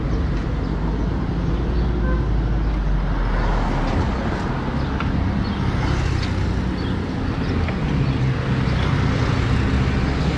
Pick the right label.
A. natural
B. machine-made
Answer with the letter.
A